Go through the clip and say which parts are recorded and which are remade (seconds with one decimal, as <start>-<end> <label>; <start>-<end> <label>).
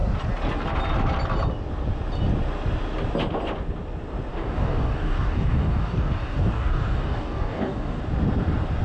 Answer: 0.0-4.3 recorded; 4.3-8.0 remade; 8.0-8.8 recorded